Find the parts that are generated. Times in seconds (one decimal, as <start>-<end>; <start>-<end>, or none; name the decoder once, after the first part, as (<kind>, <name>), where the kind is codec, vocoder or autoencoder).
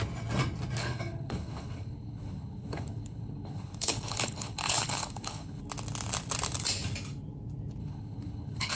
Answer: 0.8-5.6 (codec, HILCodec); 7.8-8.8